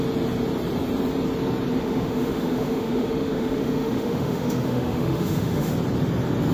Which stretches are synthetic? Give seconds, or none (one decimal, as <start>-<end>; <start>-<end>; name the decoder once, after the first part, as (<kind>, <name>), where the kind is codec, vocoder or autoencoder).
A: 1.8-5.7 (autoencoder, DAC-VAE)